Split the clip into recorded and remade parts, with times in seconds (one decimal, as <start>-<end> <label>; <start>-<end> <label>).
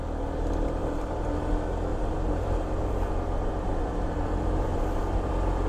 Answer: 0.0-0.8 recorded; 0.8-1.5 remade; 1.5-1.9 recorded; 1.9-5.3 remade; 5.3-5.7 recorded